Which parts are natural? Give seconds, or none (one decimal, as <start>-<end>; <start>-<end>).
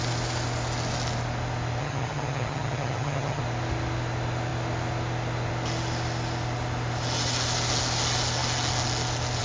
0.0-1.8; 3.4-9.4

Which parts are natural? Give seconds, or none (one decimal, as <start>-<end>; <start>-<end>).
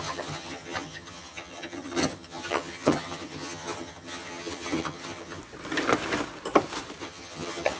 5.4-7.0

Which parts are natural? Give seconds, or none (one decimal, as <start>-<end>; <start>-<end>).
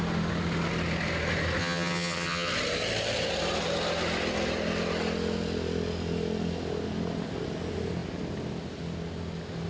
0.0-1.6; 2.5-9.7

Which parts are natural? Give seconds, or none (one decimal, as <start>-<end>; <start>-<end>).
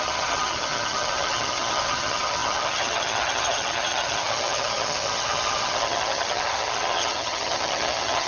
none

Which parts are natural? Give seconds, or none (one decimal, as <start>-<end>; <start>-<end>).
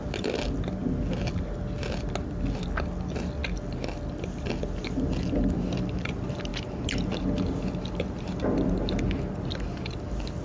0.0-10.4